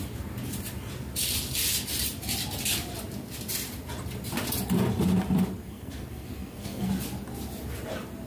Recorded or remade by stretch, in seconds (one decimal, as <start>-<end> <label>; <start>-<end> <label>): 0.0-5.6 recorded; 5.6-6.9 remade; 6.9-8.3 recorded